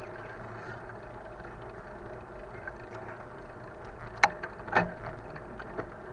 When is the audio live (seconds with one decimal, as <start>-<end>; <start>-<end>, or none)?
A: 0.0-6.1